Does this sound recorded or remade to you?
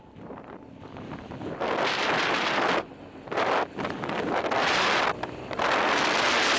recorded